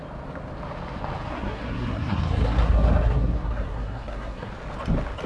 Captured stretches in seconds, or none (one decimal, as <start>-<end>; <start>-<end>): 0.0-1.3; 4.5-5.3